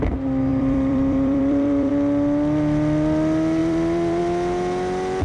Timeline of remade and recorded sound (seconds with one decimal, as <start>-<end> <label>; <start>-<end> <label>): 0.0-0.5 recorded; 0.5-1.9 remade; 1.9-3.6 recorded; 3.6-4.2 remade; 4.2-5.2 recorded

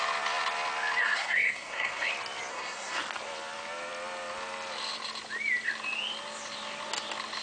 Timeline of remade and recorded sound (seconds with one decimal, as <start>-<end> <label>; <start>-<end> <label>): 0.0-1.0 recorded; 1.0-2.1 remade; 2.1-2.5 recorded; 2.5-3.0 remade; 3.0-7.4 recorded

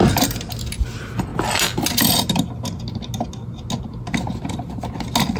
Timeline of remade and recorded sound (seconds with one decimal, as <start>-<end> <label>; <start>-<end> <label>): 0.0-5.4 recorded

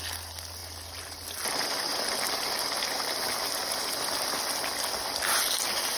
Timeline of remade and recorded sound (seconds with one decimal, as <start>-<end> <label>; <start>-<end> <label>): 0.0-6.0 recorded